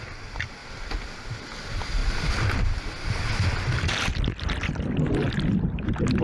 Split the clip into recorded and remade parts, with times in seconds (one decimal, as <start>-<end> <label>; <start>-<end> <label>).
0.0-6.2 recorded